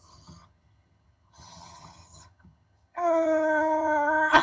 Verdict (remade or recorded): remade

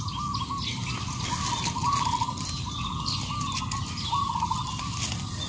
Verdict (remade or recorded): recorded